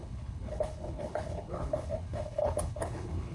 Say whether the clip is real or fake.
fake